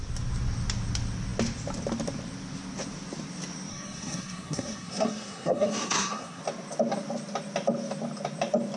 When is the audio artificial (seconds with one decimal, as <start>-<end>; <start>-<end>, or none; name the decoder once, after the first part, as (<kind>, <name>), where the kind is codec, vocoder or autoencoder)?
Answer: 3.7-6.4 (codec, SNAC)